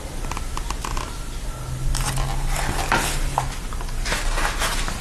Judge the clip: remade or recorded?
recorded